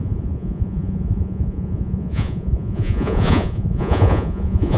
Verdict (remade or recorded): remade